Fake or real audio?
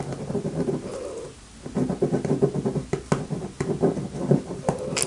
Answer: real